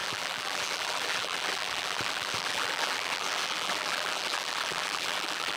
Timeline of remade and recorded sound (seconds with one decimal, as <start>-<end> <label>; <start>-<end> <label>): 0.0-5.6 remade